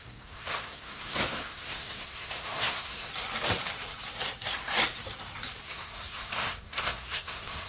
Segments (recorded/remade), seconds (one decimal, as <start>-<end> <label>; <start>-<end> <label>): 0.0-3.1 remade; 3.1-5.6 recorded; 5.6-7.7 remade